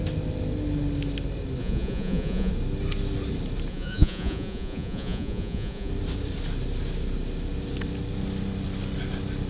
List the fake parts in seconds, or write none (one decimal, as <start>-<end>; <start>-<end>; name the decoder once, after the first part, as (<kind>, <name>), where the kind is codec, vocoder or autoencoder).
1.6-2.5 (vocoder, Vocos); 3.7-5.9

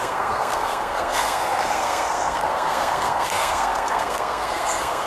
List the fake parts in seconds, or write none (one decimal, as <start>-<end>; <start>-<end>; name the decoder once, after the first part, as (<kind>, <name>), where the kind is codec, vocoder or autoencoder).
0.0-5.1 (codec, SNAC)

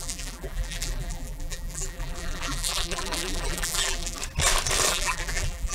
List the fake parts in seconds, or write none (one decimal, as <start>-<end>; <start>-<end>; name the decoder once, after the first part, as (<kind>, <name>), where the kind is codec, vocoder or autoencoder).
0.0-4.2 (vocoder, BigVGAN v2); 4.9-5.7

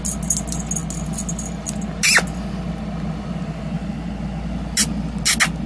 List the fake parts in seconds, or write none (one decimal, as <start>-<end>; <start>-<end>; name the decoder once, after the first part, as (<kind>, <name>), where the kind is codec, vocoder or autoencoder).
none

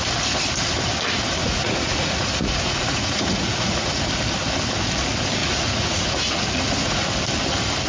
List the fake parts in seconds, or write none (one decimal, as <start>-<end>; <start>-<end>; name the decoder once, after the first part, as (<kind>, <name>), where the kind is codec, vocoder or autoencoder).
1.4-4.0 (vocoder, Vocos); 5.4-7.1

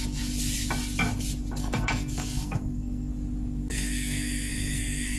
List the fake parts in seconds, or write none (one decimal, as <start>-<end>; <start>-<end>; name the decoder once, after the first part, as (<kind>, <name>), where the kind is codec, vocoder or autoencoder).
1.6-3.1 (codec, SNAC); 3.6-5.2